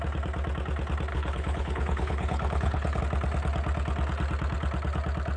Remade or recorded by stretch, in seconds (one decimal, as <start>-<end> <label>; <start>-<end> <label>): 0.0-1.1 recorded; 1.1-3.0 remade; 3.0-5.4 recorded